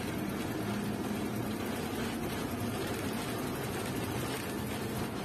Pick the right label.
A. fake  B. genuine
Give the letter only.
B